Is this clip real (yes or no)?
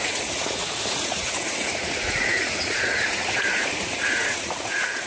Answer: no